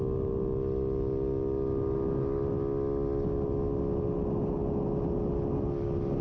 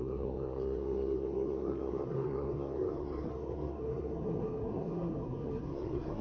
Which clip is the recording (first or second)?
first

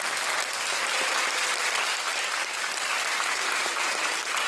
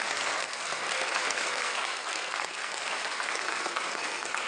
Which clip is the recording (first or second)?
first